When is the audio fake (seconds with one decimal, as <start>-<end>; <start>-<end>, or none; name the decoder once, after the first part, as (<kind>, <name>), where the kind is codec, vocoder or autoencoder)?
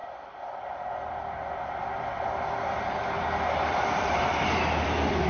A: 2.6-5.3 (vocoder, BigVGAN v2)